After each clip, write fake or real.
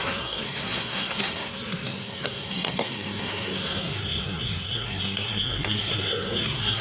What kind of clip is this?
fake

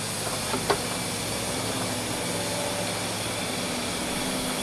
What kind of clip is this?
real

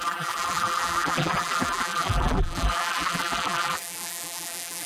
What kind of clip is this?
fake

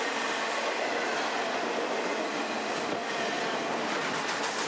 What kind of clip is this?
real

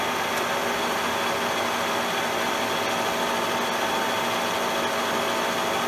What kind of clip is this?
real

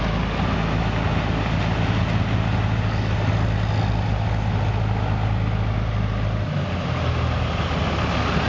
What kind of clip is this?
real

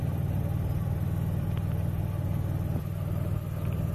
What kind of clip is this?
real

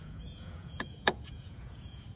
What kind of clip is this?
fake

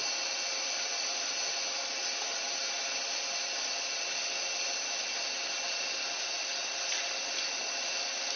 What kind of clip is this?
real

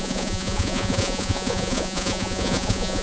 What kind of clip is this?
fake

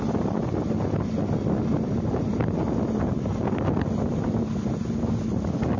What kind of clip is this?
real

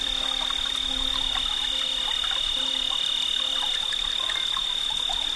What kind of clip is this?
real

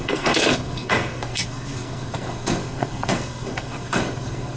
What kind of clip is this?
fake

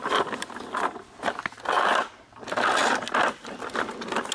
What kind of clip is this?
real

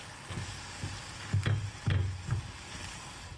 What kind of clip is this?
real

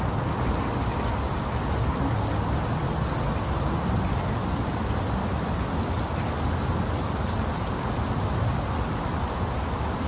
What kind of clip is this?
real